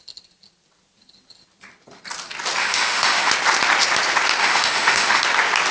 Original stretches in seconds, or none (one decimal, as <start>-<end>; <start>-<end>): 0.0-2.6; 3.3-4.4; 5.2-5.7